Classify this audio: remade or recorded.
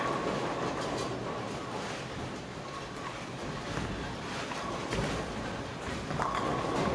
recorded